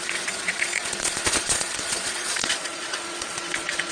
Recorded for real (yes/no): no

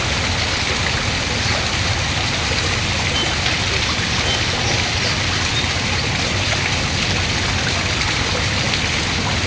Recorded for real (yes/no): yes